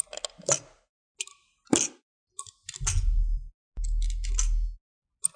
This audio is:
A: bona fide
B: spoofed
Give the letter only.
A